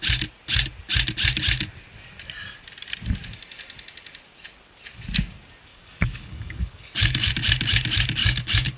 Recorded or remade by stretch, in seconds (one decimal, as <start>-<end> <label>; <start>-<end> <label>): 0.0-5.7 recorded; 5.7-7.3 remade; 7.3-8.2 recorded; 8.2-8.8 remade